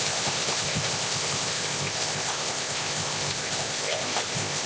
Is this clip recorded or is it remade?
remade